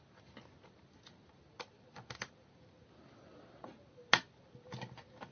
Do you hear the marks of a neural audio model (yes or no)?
no